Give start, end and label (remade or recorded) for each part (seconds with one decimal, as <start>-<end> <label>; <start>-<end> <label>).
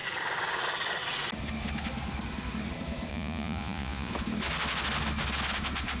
0.0-3.1 recorded; 3.1-4.1 remade; 4.1-6.0 recorded